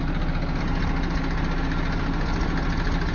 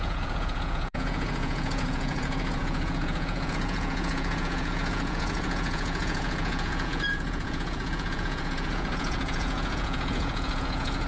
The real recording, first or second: first